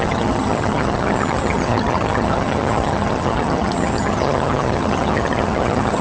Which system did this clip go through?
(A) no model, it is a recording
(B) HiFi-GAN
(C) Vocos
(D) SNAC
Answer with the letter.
B